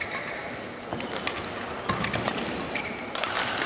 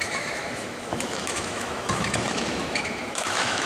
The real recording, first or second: first